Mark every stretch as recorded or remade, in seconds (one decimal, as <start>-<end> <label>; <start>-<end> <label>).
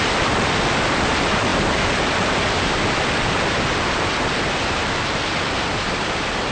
0.0-6.5 recorded